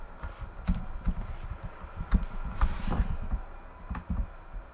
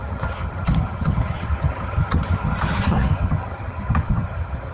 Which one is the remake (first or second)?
second